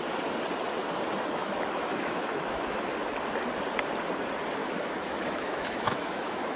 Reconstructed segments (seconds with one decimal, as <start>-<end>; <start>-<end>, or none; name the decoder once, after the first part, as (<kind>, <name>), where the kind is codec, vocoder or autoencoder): 1.4-2.9 (autoencoder, DAC-VAE); 4.6-6.6